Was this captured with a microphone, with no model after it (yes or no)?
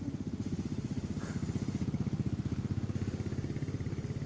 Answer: yes